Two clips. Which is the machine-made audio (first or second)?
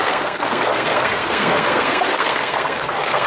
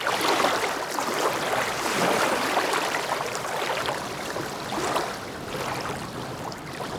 first